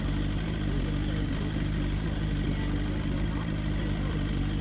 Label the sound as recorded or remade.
recorded